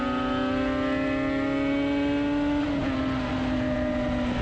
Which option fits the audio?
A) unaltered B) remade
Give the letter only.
A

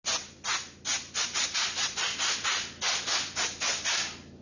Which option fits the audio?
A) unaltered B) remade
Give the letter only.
A